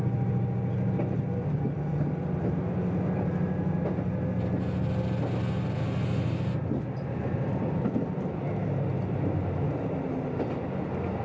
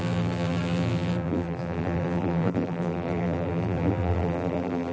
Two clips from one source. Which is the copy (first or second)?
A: second